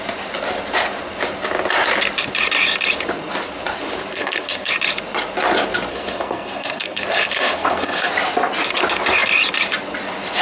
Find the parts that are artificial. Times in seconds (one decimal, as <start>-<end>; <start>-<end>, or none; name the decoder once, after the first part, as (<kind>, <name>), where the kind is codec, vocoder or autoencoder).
4.1-4.7 (codec, SNAC); 5.9-8.1